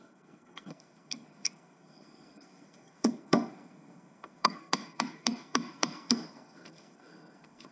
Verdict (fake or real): fake